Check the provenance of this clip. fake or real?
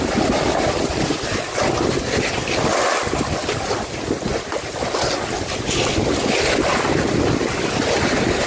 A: real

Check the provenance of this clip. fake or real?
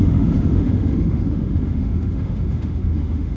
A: fake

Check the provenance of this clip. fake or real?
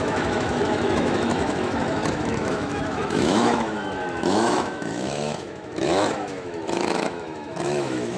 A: fake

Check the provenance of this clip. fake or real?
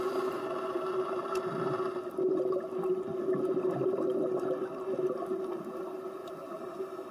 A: real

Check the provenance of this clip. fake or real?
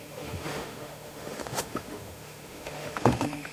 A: fake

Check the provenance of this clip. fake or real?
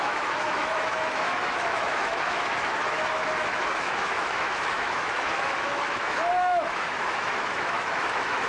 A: fake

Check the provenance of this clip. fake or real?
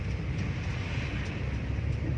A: real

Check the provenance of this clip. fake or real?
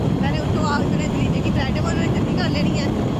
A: real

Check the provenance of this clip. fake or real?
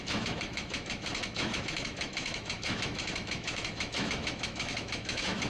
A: fake